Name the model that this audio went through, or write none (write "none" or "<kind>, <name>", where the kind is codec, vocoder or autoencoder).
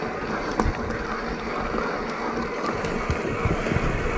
none